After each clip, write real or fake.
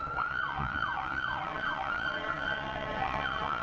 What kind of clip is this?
fake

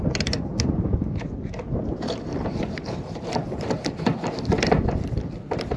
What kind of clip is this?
real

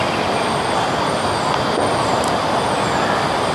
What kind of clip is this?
real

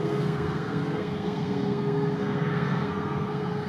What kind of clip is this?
fake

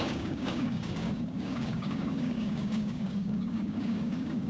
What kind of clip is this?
fake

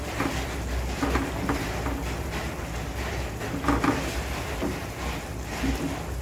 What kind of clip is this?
real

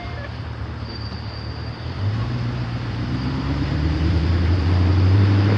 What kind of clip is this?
fake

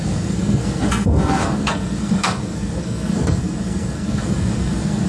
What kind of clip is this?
fake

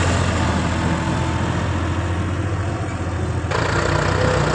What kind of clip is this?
real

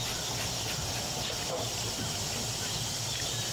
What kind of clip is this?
fake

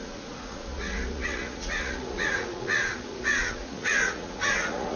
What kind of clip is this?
fake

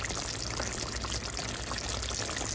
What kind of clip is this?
real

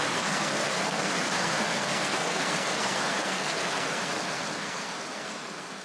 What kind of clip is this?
fake